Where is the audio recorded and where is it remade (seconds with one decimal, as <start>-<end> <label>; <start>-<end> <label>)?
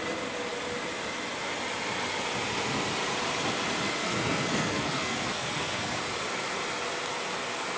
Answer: 0.0-4.0 recorded; 4.0-6.0 remade; 6.0-7.8 recorded